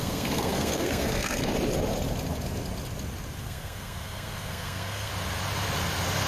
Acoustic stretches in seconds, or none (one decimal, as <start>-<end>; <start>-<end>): 1.5-3.4; 5.1-6.3